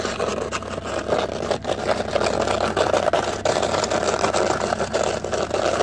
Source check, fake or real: real